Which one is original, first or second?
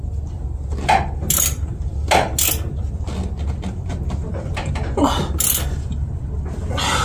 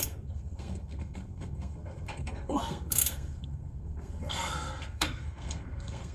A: first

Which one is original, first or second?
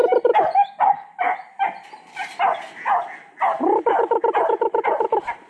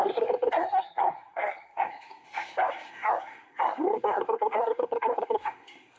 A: first